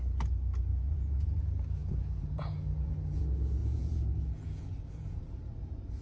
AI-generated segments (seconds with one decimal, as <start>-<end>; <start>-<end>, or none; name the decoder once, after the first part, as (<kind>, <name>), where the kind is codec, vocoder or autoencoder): 0.7-1.4 (vocoder, Vocos); 1.8-3.2; 3.6-5.2